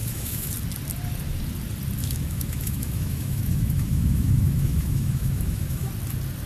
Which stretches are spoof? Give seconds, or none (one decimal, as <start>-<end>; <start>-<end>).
0.0-0.5; 2.0-5.9